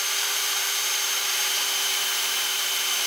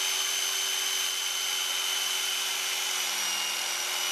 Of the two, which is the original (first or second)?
second